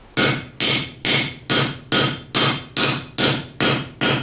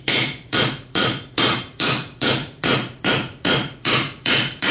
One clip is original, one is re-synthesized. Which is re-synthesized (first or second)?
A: second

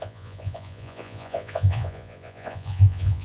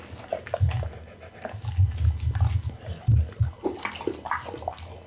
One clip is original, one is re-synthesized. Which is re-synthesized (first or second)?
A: first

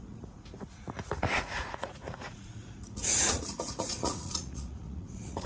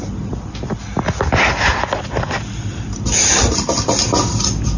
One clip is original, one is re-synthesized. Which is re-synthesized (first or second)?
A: first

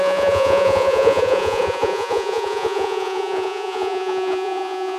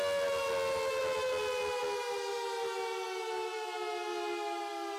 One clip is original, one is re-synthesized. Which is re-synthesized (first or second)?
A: first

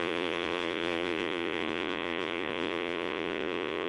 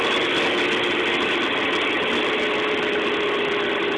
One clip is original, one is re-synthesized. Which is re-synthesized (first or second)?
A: first